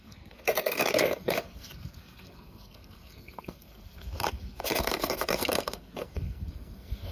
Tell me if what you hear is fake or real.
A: fake